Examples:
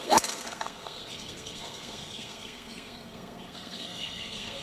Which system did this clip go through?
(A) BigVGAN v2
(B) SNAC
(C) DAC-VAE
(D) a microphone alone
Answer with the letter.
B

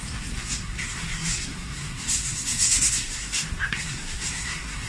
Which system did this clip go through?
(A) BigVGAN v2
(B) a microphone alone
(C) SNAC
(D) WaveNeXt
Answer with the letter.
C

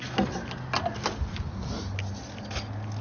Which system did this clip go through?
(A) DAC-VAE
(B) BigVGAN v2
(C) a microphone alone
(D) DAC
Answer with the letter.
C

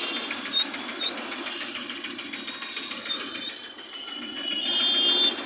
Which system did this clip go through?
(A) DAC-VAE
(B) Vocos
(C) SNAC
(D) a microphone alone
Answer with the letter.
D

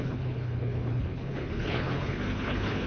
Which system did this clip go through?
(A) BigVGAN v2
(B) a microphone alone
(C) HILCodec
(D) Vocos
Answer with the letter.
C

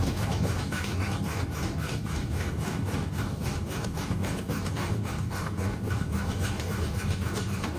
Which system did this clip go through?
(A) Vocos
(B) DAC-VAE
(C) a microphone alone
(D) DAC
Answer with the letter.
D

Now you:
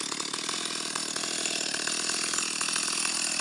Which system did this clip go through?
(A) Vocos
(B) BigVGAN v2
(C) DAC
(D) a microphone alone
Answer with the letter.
D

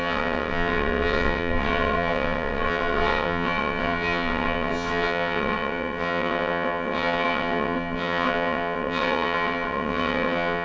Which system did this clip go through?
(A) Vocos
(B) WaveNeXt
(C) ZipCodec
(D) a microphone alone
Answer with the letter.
B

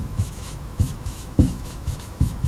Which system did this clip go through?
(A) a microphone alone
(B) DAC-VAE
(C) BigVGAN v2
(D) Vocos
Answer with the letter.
B